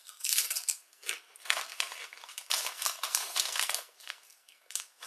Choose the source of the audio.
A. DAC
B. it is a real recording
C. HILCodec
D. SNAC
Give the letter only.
D